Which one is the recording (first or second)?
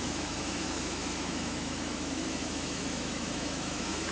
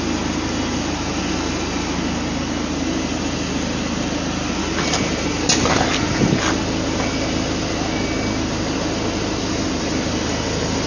second